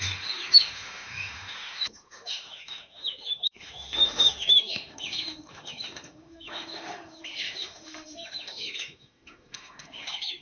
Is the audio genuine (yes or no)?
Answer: no